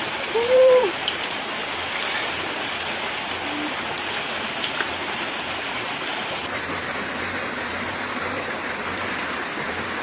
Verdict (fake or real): real